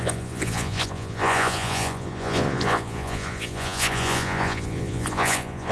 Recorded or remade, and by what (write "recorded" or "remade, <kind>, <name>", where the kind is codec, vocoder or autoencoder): remade, vocoder, Vocos